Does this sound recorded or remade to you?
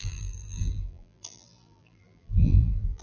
remade